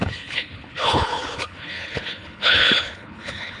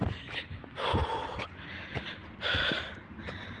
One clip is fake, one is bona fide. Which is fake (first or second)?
first